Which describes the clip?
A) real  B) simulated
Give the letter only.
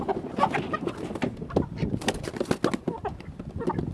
A